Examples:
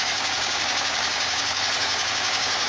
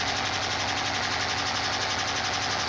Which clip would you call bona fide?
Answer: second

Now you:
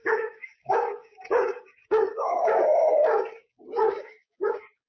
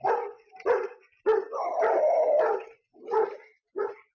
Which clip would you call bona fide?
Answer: second